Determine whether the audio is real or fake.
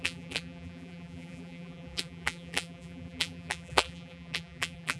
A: fake